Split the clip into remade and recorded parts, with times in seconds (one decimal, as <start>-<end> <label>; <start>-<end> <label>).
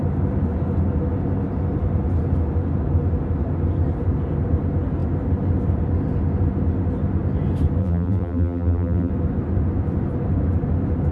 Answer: 0.0-7.8 recorded; 7.8-9.1 remade; 9.1-11.1 recorded